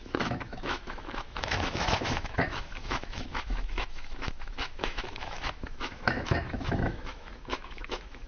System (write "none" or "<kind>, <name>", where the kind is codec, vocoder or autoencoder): autoencoder, DAC-VAE